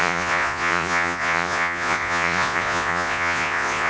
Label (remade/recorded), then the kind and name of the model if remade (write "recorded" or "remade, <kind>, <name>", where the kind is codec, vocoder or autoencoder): remade, vocoder, Vocos